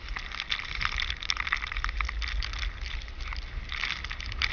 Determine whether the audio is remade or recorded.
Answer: recorded